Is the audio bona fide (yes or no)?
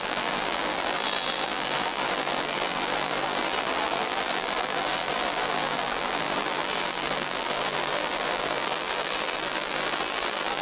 no